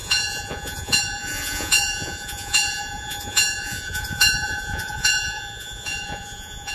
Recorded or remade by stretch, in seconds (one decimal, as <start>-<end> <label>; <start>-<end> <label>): 0.0-6.7 remade

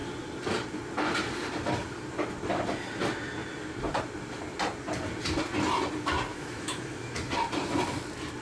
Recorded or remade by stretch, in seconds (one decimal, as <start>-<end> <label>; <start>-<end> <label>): 0.0-6.3 recorded; 6.3-7.2 remade; 7.2-8.4 recorded

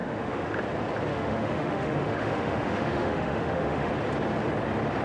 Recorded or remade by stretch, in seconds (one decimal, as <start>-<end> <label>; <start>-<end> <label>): 0.0-0.6 remade; 0.6-1.1 recorded; 1.1-3.9 remade; 3.9-5.0 recorded